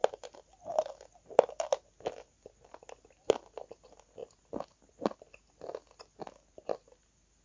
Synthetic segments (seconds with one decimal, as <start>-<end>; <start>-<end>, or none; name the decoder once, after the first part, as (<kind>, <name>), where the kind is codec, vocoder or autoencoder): none

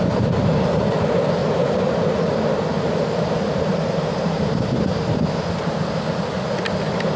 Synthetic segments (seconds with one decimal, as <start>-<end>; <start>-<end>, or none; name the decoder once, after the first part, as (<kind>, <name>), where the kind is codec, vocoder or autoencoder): 1.4-2.2 (vocoder, BigVGAN v2); 2.7-5.0